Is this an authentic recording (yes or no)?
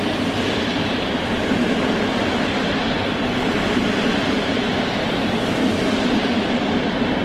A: yes